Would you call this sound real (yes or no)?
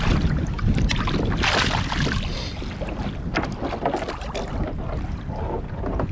yes